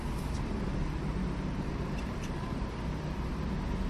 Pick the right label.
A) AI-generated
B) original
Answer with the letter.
B